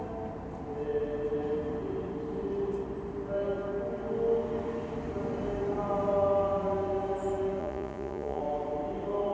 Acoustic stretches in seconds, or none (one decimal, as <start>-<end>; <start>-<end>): 0.0-7.6; 8.4-9.3